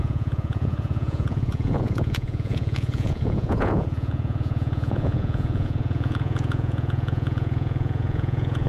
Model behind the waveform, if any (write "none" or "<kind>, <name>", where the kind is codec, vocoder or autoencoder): vocoder, Vocos